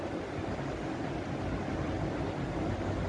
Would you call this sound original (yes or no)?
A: yes